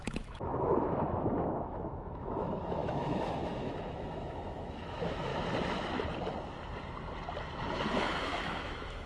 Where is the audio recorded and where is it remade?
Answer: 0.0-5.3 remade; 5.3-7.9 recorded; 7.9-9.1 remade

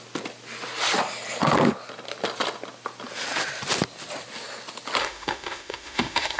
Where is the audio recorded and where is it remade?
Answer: 0.0-5.0 recorded; 5.0-6.4 remade

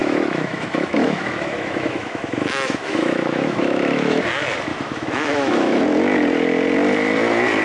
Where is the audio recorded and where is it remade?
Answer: 0.0-4.2 remade; 4.2-4.7 recorded; 4.7-5.8 remade; 5.8-7.6 recorded